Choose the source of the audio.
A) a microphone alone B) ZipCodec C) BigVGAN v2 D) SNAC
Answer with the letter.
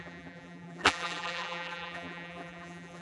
C